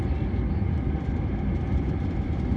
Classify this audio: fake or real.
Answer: real